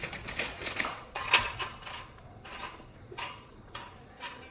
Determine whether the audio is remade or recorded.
remade